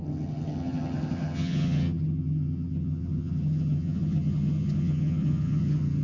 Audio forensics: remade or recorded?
remade